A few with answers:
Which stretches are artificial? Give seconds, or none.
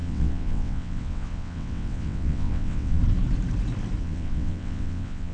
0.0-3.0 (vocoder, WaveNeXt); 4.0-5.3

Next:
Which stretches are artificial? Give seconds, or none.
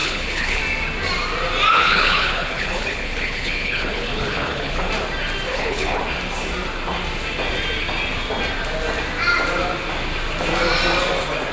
0.0-0.6 (codec, HILCodec); 1.7-4.9; 5.5-6.0